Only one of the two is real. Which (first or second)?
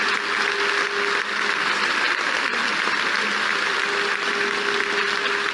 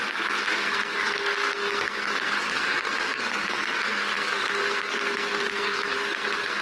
first